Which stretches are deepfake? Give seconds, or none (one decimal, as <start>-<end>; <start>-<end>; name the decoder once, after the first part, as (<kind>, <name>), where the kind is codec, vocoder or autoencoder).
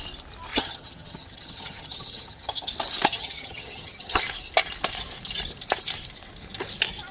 0.5-2.7 (vocoder, HiFi-GAN); 3.1-4.2